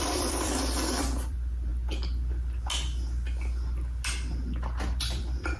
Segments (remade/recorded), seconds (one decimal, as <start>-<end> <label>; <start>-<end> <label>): 0.0-1.7 remade; 1.7-5.0 recorded; 5.0-5.6 remade